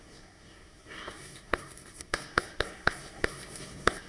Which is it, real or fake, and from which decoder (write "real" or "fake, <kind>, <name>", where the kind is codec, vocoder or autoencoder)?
fake, codec, SNAC